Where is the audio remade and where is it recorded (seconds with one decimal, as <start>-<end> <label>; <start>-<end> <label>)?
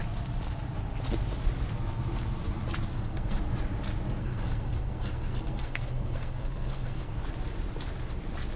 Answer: 0.0-2.9 recorded; 2.9-3.4 remade; 3.4-4.2 recorded; 4.2-7.2 remade; 7.2-8.6 recorded